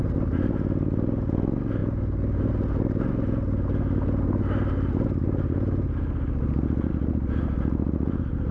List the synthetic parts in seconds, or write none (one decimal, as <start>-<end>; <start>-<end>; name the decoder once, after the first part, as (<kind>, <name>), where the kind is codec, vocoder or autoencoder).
none